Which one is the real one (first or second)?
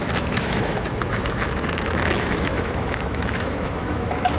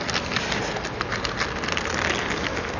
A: second